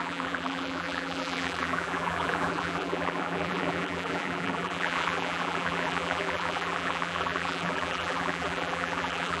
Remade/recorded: remade